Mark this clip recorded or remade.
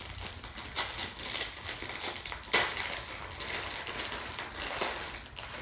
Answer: recorded